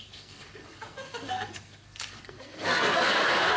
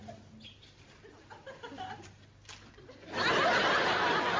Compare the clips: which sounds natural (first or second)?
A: second